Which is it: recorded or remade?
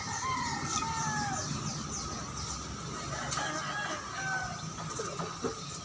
recorded